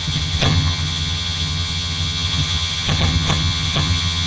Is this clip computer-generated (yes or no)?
yes